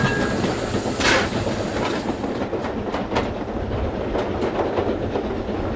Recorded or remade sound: recorded